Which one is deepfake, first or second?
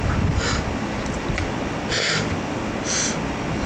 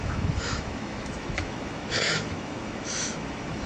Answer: second